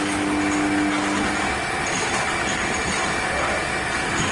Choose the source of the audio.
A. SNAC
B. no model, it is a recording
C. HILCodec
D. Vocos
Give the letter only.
B